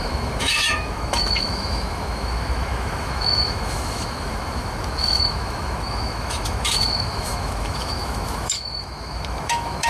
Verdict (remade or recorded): remade